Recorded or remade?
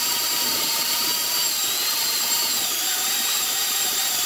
remade